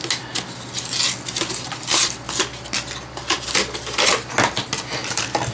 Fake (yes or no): no